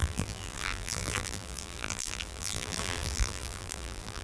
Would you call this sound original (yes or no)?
no